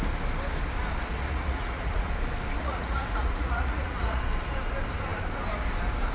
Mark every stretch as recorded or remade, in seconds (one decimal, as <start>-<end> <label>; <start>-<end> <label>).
0.0-1.2 recorded; 1.2-2.1 remade; 2.1-2.6 recorded; 2.6-4.2 remade; 4.2-6.1 recorded